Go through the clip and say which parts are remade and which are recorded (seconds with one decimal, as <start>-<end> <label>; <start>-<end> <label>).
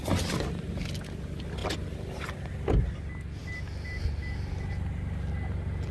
0.0-5.9 recorded